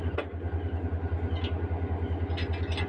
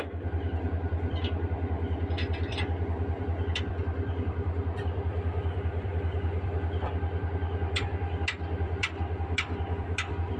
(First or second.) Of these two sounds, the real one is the first